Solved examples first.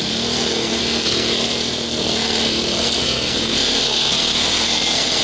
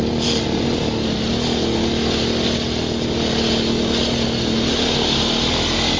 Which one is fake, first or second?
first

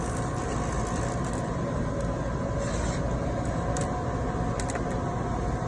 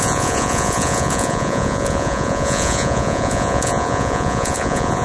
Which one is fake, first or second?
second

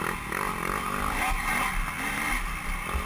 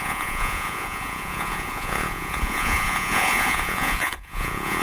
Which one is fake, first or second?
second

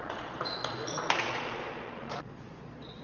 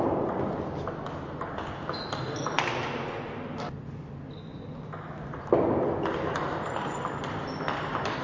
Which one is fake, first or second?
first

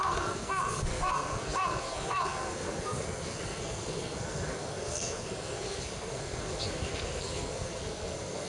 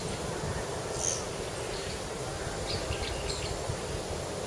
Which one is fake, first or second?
first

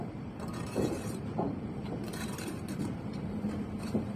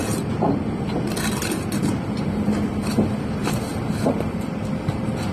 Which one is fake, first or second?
first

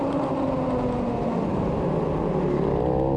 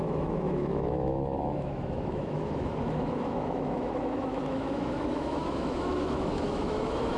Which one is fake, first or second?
second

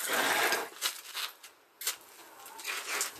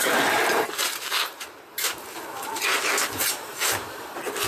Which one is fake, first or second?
second